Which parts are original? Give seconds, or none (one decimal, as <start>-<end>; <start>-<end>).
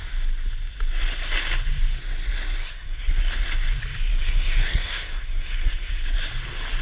0.0-2.6; 3.2-4.1; 5.9-6.8